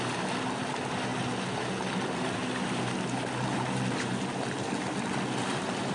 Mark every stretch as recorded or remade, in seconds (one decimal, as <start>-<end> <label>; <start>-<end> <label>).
0.0-5.9 recorded